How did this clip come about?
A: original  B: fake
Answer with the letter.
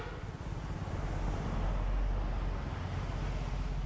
A